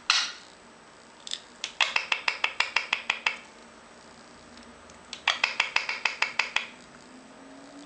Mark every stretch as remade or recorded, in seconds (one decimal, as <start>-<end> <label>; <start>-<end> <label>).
0.0-7.9 recorded